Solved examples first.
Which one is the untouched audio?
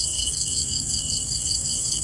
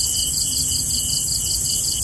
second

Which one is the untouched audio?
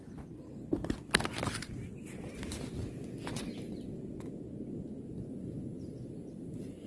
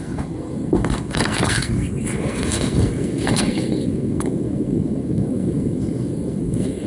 first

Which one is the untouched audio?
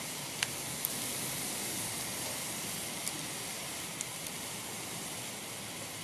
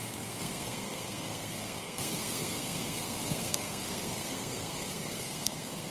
first